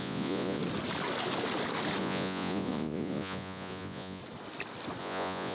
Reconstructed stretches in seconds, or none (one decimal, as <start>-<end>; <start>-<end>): 0.0-0.6; 2.0-4.2; 5.0-5.5